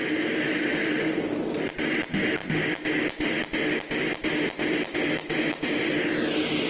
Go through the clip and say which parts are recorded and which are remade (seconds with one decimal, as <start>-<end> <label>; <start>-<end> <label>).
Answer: 0.0-6.7 recorded